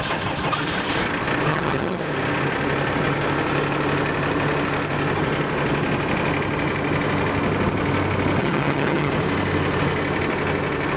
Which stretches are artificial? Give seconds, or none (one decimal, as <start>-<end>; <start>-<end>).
1.5-2.0; 8.4-9.1